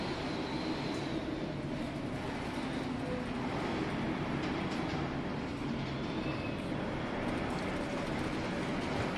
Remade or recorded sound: recorded